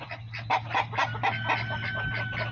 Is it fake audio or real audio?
real